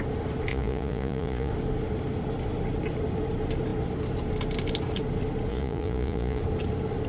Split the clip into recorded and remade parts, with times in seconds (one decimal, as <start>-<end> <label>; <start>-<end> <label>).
0.0-0.5 recorded; 0.5-1.5 remade; 1.5-5.5 recorded; 5.5-6.4 remade; 6.4-7.1 recorded